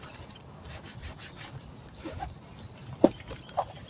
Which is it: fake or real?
fake